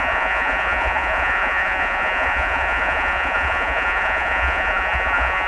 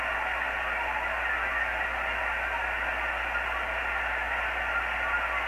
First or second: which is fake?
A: first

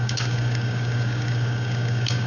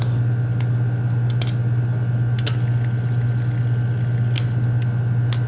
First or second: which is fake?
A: first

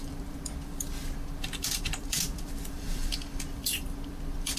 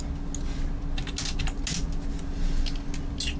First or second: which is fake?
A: first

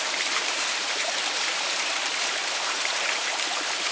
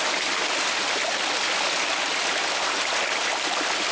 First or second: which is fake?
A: first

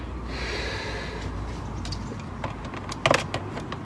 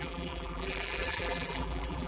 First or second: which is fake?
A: second